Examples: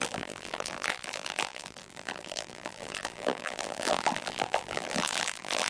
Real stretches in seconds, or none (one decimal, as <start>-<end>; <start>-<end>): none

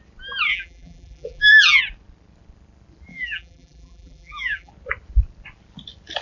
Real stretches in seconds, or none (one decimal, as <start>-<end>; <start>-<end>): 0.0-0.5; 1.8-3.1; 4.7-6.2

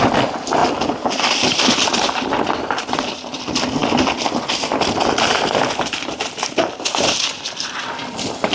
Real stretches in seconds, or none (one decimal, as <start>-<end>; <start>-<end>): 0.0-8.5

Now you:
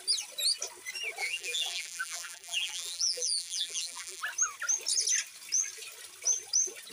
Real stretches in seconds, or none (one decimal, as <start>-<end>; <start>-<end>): 0.0-1.2; 4.2-6.9